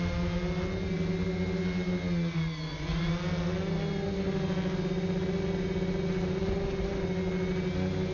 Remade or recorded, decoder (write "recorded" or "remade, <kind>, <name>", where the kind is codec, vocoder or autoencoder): recorded